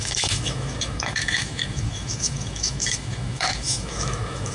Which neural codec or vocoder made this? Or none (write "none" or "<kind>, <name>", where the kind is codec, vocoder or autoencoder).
autoencoder, DAC-VAE